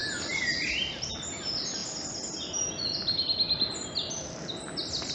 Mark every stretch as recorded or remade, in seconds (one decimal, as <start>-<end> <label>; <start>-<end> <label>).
0.0-5.1 recorded

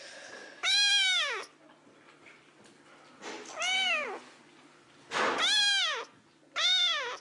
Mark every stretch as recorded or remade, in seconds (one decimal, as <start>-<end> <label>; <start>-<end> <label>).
0.0-7.2 recorded

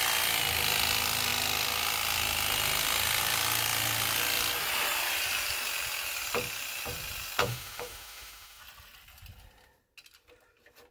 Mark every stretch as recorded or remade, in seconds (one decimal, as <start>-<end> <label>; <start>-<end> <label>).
0.0-7.4 recorded; 7.4-8.6 remade; 8.6-10.9 recorded

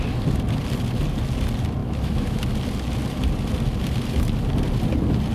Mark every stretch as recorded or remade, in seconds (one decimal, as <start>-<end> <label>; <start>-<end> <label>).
0.0-1.8 recorded; 1.8-2.4 remade; 2.4-5.3 recorded

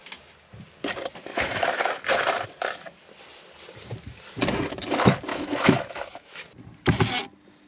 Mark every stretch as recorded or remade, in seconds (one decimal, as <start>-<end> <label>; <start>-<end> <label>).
0.0-1.3 recorded; 1.3-2.0 remade; 2.0-5.3 recorded; 5.3-6.4 remade; 6.4-7.7 recorded

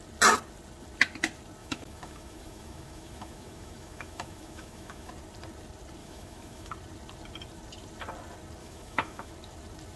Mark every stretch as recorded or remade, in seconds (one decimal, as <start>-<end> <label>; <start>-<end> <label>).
0.0-1.6 recorded; 1.6-5.1 remade; 5.1-6.0 recorded; 6.0-6.7 remade; 6.7-8.6 recorded; 8.6-9.3 remade; 9.3-10.0 recorded

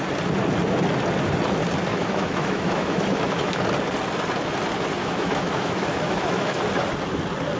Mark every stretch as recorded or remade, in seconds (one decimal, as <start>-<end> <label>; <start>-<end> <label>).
0.0-1.9 recorded; 1.9-3.6 remade; 3.6-5.0 recorded; 5.0-6.6 remade; 6.6-7.6 recorded